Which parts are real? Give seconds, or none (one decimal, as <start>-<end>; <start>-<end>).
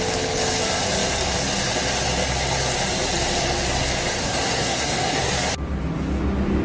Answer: 0.0-4.2; 5.3-6.6